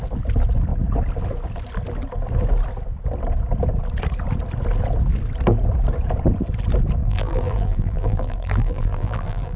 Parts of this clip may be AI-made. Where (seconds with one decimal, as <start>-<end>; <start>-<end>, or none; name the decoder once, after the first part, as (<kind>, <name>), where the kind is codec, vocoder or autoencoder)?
7.0-9.6 (vocoder, BigVGAN v2)